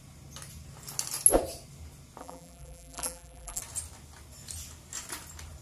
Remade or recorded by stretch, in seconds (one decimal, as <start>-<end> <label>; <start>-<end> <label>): 0.0-2.2 recorded; 2.2-3.6 remade; 3.6-5.6 recorded